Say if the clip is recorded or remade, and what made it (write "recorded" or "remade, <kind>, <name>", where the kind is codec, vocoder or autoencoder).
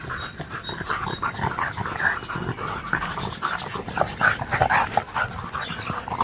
recorded